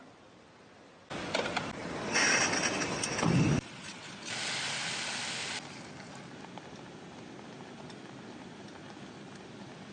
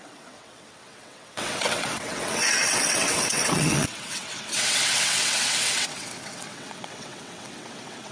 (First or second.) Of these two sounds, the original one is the first